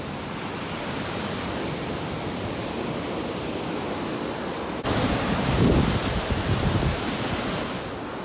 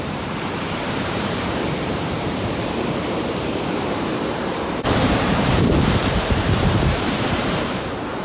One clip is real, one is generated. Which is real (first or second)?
first